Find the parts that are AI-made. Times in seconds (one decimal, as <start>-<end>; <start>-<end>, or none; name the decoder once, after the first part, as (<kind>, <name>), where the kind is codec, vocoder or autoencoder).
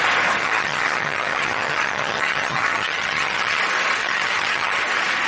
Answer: 0.4-3.6 (vocoder, HiFi-GAN); 4.0-4.8